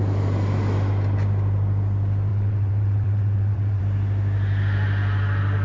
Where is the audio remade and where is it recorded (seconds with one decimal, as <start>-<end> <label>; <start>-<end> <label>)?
0.0-2.3 recorded; 2.3-3.8 remade; 3.8-5.6 recorded